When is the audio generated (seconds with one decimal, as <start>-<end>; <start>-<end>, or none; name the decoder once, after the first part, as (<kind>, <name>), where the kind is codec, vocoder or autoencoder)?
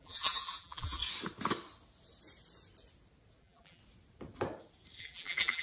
0.0-1.0 (vocoder, BigVGAN v2); 3.4-3.8; 5.0-5.6